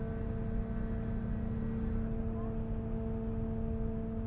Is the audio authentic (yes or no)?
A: yes